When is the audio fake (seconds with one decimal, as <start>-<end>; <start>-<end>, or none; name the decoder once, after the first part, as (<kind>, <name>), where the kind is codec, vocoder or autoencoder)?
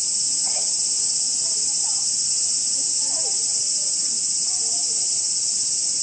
none